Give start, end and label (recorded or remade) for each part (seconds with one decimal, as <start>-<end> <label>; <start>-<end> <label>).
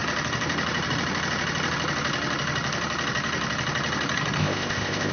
0.0-4.4 recorded; 4.4-5.1 remade